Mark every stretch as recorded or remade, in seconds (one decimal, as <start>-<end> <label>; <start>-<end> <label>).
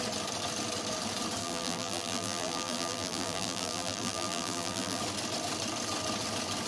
0.0-1.4 recorded; 1.4-5.0 remade; 5.0-6.7 recorded